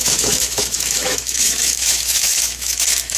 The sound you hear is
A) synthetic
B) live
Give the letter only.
A